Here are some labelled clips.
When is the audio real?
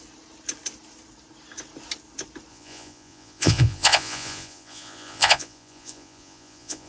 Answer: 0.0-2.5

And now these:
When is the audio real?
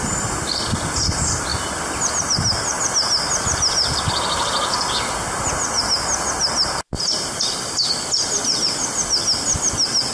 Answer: 0.0-10.1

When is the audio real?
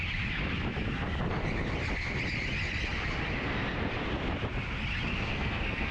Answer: 0.0-5.1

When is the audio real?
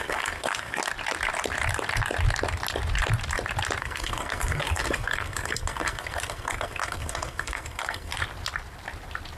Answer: 0.8-3.8; 8.1-9.4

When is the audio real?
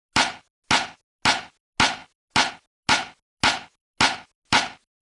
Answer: 0.0-5.0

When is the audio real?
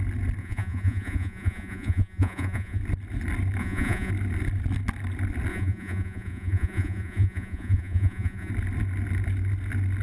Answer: 0.0-0.4; 2.8-3.6; 4.1-5.5; 8.5-10.0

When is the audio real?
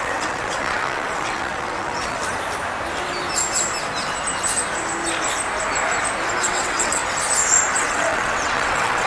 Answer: 2.2-6.4; 7.0-7.7